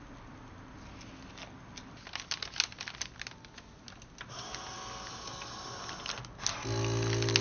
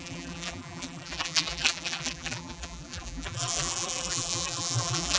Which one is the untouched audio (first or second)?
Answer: first